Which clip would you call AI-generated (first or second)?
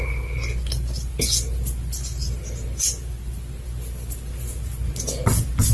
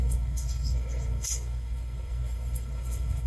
second